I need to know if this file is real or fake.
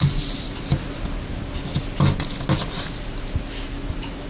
real